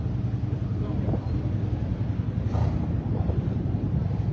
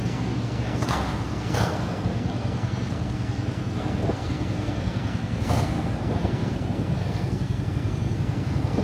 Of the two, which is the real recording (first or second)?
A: first